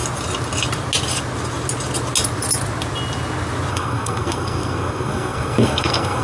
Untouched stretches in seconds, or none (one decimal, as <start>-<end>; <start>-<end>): 0.0-3.7